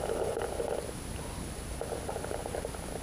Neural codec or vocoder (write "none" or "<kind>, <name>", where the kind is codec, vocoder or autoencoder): none